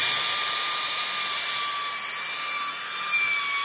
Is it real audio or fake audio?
real